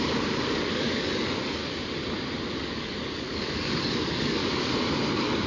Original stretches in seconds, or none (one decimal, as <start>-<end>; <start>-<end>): 1.6-2.6; 4.4-5.1